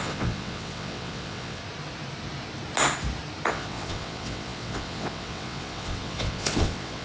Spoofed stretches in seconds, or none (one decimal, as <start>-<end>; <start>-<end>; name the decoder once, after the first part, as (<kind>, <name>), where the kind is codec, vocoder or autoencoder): 0.0-1.6 (vocoder, WaveNeXt); 3.5-7.0